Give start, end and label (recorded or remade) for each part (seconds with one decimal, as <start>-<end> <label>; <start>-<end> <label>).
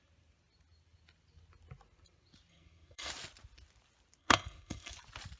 0.0-2.5 recorded; 2.5-3.1 remade; 3.1-4.2 recorded; 4.2-4.9 remade; 4.9-5.4 recorded